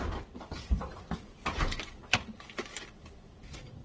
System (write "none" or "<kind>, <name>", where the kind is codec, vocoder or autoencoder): none